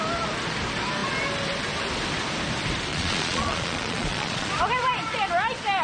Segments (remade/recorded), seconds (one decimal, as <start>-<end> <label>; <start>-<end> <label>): 0.0-2.9 recorded; 2.9-4.5 remade; 4.5-5.8 recorded

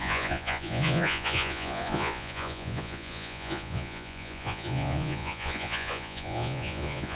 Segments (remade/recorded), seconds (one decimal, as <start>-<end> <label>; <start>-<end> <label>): 0.0-7.2 remade

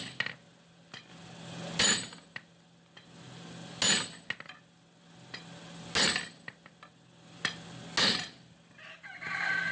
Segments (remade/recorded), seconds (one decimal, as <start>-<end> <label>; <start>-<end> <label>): 0.0-9.7 recorded

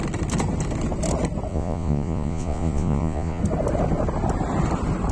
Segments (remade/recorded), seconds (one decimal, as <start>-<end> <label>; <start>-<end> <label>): 0.0-1.5 recorded; 1.5-3.4 remade; 3.4-5.1 recorded